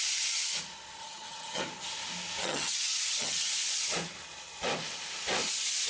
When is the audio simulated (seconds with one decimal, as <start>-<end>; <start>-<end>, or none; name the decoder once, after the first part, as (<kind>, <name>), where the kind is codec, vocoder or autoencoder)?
1.0-1.6 (vocoder, HiFi-GAN); 2.4-3.5